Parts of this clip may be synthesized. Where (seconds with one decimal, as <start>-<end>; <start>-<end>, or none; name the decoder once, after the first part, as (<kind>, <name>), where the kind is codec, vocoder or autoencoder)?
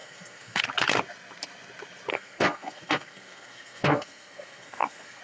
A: 0.0-0.6 (codec, SNAC); 2.1-5.2